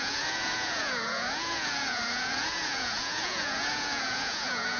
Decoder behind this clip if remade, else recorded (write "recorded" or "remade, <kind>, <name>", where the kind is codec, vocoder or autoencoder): remade, vocoder, Vocos